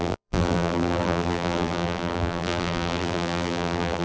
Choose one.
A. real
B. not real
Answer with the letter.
B